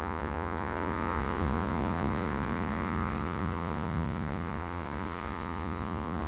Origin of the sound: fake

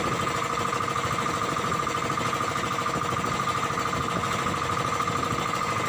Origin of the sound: real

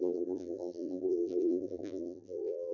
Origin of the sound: fake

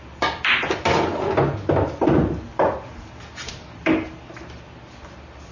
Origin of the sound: real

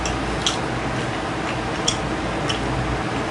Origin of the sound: real